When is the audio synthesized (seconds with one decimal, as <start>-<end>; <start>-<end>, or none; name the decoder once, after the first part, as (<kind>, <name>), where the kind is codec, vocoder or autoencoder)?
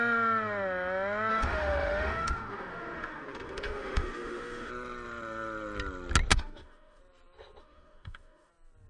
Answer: 1.3-4.7 (autoencoder, DAC-VAE); 6.3-7.0; 7.6-8.5